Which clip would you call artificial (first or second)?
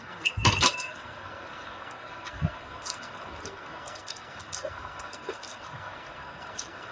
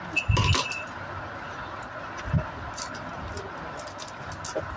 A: first